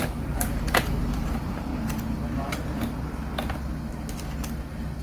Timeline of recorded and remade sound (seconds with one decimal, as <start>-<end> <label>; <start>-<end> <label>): 0.0-1.7 remade; 1.7-5.0 recorded